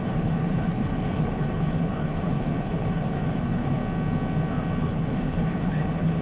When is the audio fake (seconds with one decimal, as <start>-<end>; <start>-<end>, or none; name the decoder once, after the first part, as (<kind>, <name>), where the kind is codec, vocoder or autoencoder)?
0.0-3.8 (codec, HILCodec); 4.8-6.2